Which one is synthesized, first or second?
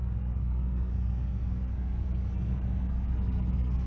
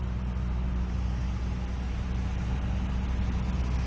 first